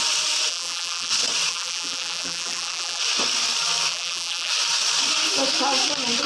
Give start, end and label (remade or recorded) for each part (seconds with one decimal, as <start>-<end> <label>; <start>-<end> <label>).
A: 0.0-0.5 recorded; 0.5-1.1 remade; 1.1-1.5 recorded; 1.5-3.0 remade; 3.0-3.9 recorded; 3.9-4.5 remade; 4.5-6.3 recorded